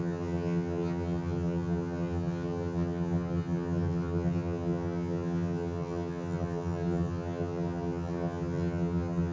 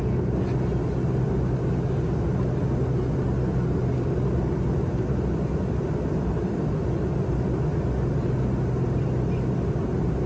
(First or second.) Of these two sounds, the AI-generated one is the first